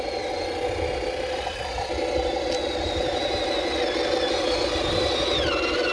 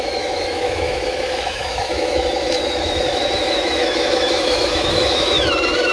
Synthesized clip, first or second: second